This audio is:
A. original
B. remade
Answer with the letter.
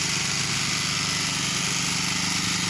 A